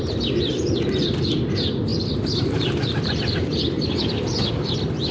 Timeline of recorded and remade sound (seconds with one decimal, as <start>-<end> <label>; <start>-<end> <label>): 0.0-5.1 remade

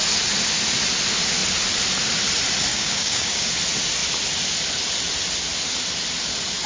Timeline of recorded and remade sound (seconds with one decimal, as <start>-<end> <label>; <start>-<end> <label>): 0.0-2.7 recorded; 2.7-3.5 remade; 3.5-6.7 recorded

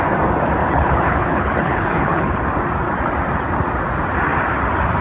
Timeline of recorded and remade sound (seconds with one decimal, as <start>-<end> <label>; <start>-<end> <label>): 0.0-0.6 recorded; 0.6-2.4 remade; 2.4-5.0 recorded

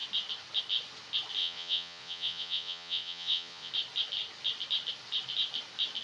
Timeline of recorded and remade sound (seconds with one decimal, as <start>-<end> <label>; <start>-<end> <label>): 0.0-1.4 recorded; 1.4-3.7 remade; 3.7-6.0 recorded

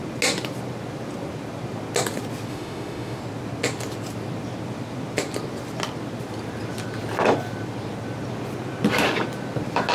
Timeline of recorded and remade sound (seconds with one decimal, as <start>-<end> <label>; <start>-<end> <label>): 0.0-2.5 recorded; 2.5-3.2 remade; 3.2-9.9 recorded

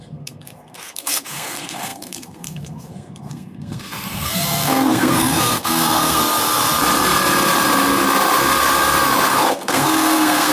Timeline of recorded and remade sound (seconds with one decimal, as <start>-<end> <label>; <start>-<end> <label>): 0.0-6.2 remade; 6.2-9.3 recorded; 9.3-10.5 remade

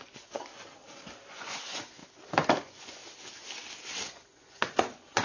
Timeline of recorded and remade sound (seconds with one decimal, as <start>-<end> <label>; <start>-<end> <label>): 0.0-0.5 remade; 0.5-1.3 recorded; 1.3-2.0 remade; 2.0-2.6 recorded; 2.6-3.0 remade; 3.0-4.1 recorded; 4.1-5.2 remade

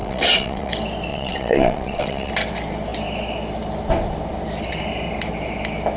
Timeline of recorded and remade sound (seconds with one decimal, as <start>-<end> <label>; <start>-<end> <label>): 0.0-0.7 remade; 0.7-1.1 recorded; 1.1-2.3 remade; 2.3-6.0 recorded